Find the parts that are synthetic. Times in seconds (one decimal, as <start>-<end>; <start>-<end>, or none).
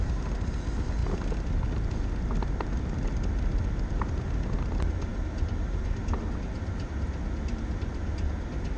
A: none